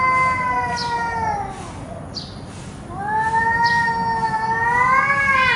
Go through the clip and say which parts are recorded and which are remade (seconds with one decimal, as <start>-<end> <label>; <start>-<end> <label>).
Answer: 0.0-5.6 recorded